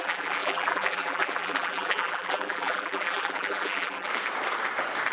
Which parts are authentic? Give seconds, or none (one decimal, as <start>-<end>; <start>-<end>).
4.1-5.1